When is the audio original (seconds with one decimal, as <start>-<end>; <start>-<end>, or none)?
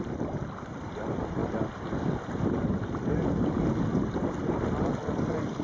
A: 1.4-2.4; 4.2-4.9